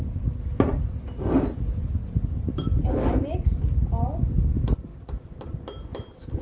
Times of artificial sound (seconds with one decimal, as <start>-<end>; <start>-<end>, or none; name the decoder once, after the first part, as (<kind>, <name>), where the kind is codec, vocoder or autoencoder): 2.0-3.6 (vocoder, BigVGAN v2)